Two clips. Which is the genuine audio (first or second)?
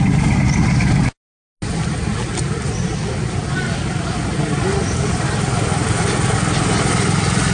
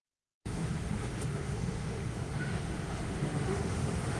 first